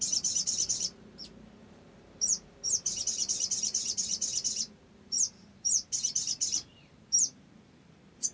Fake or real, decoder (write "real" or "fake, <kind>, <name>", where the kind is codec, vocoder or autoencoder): fake, vocoder, BigVGAN v2